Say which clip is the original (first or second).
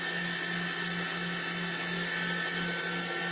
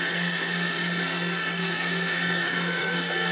first